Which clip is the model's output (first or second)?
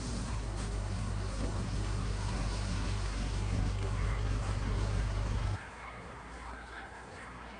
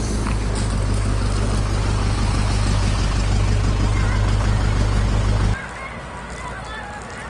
first